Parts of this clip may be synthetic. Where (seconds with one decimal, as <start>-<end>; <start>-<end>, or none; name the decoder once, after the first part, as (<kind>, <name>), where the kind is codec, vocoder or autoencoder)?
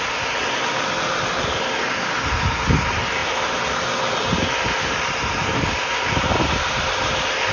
none